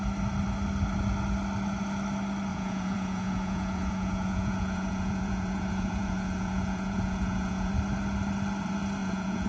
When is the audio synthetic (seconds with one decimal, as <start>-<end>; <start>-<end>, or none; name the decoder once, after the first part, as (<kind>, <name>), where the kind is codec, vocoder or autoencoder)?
2.5-7.7 (vocoder, Vocos); 9.0-9.5